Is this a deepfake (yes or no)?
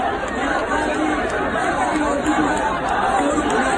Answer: no